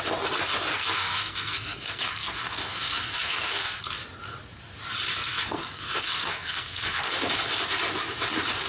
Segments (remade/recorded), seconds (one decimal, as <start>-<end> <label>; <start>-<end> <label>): 0.0-0.7 recorded; 0.7-3.8 remade; 3.8-5.2 recorded; 5.2-7.1 remade; 7.1-8.7 recorded